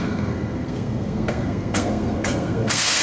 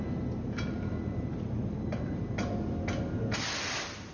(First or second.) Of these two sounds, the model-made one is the first